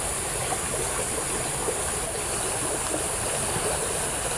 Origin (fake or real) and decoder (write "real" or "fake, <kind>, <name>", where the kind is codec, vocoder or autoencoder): real